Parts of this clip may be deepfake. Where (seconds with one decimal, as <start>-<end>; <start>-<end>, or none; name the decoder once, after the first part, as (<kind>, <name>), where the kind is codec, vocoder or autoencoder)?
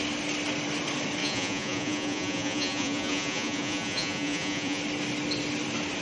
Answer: 1.2-4.8 (vocoder, Vocos)